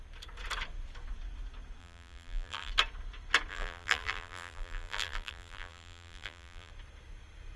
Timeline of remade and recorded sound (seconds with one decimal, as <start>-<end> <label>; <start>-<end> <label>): 0.0-1.8 recorded; 1.8-2.7 remade; 2.7-3.5 recorded; 3.5-6.7 remade; 6.7-7.6 recorded